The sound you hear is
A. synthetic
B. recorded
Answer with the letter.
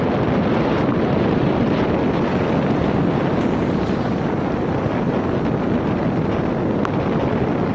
B